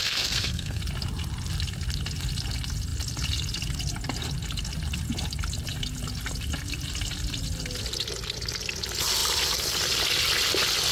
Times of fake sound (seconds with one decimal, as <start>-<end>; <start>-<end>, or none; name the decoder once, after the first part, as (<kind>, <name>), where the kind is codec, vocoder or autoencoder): 0.0-0.8 (codec, SNAC)